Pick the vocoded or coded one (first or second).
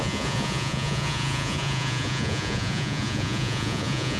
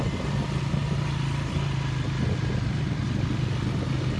first